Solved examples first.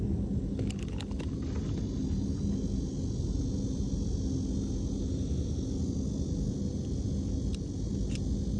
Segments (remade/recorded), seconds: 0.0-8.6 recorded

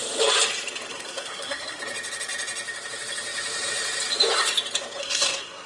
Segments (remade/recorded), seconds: 0.0-0.9 recorded; 0.9-1.8 remade; 1.8-5.0 recorded; 5.0-5.7 remade

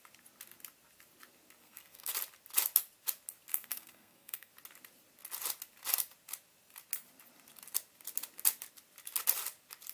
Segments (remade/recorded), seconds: 0.0-1.6 recorded; 1.6-2.1 remade; 2.1-3.5 recorded; 3.5-4.5 remade; 4.5-9.9 recorded

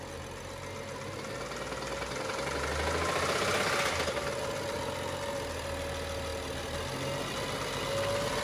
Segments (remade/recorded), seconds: 0.0-8.4 recorded

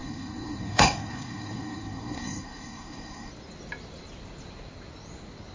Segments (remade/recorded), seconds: 0.0-3.3 remade; 3.3-5.5 recorded

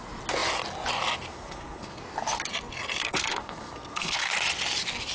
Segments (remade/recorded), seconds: 0.0-1.3 recorded; 1.3-2.0 remade; 2.0-3.0 recorded; 3.0-4.3 remade; 4.3-5.1 recorded

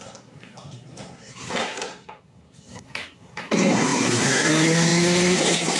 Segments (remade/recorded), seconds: 0.0-5.8 remade

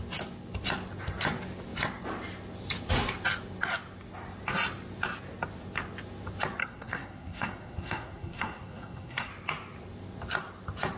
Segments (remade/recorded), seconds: 0.0-6.6 recorded; 6.6-9.3 remade; 9.3-11.0 recorded